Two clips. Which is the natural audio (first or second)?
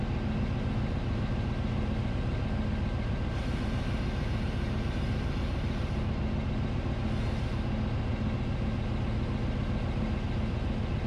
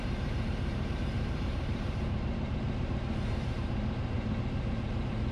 first